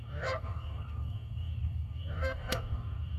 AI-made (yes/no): yes